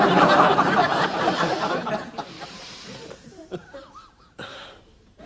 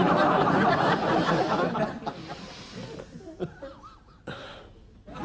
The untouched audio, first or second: second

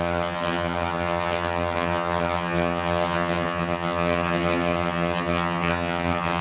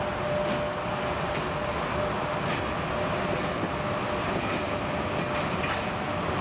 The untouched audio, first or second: second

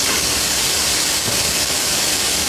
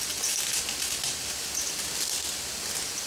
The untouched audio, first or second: second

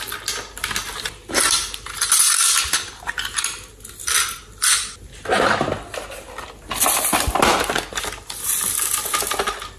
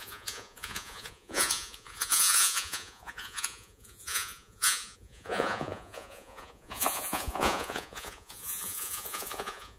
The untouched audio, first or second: first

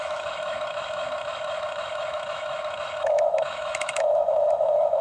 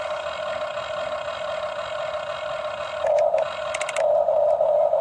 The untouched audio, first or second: second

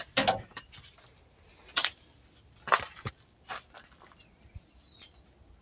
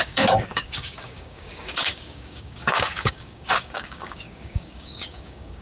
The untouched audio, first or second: first